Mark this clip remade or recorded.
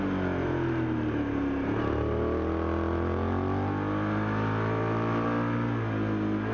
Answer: recorded